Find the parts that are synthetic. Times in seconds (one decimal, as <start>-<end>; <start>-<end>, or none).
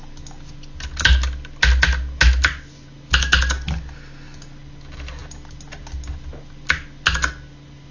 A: none